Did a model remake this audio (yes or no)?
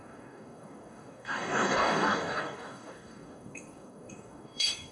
yes